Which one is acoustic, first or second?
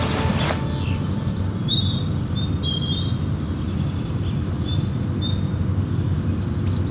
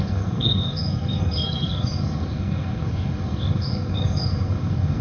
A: first